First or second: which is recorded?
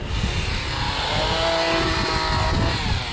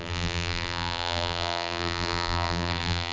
first